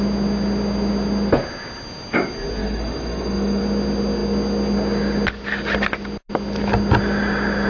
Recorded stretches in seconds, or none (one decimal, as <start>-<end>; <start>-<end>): 0.0-2.6; 3.6-7.7